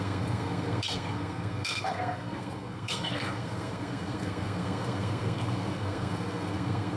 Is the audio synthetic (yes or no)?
yes